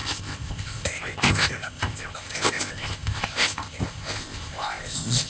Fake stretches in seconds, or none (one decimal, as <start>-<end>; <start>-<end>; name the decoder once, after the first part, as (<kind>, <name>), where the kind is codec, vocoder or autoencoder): 0.0-5.3 (codec, ZipCodec)